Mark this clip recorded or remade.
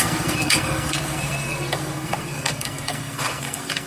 remade